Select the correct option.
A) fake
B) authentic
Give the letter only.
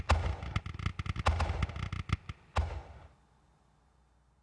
B